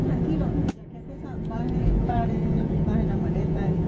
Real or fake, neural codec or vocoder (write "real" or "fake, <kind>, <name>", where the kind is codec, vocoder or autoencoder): fake, vocoder, Vocos